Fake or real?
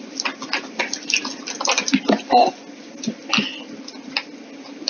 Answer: real